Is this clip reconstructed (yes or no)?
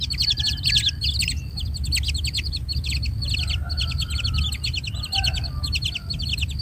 no